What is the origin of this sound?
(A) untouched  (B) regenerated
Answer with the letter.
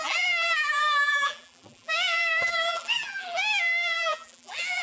B